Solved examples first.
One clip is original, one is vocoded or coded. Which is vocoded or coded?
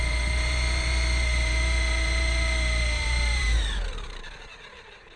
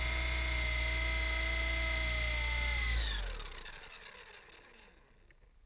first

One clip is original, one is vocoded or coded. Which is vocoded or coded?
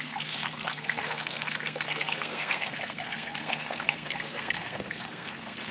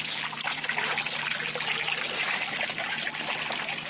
first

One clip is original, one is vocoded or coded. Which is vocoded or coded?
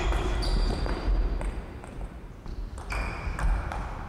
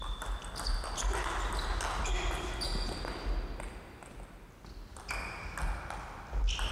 first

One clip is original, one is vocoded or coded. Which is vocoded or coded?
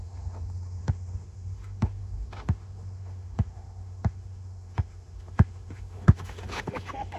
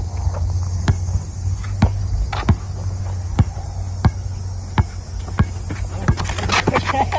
first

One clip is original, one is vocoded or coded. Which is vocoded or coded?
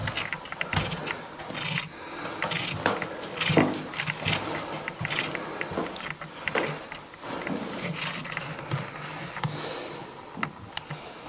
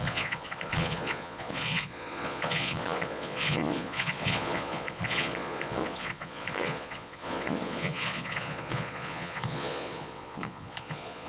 second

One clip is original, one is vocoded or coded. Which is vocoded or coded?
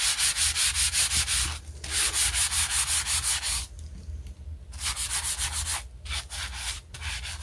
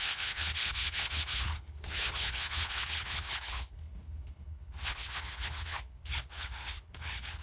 second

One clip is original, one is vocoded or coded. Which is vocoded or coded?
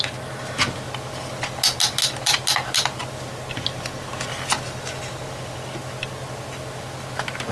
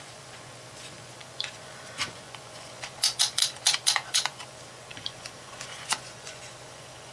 second